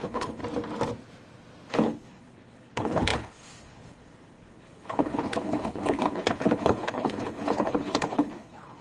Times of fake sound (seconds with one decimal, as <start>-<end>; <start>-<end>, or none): 0.0-0.4; 1.7-8.8